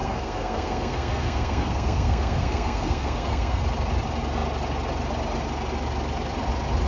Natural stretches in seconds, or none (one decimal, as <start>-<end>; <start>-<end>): 3.6-6.9